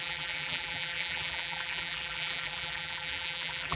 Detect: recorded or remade remade